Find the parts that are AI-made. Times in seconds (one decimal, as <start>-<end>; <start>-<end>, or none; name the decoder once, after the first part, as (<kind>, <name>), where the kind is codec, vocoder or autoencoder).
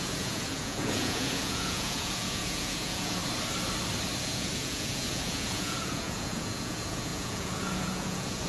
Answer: 0.0-3.2 (vocoder, Vocos); 4.2-8.5